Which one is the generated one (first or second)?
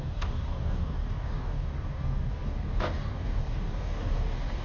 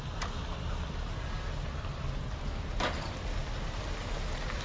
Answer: first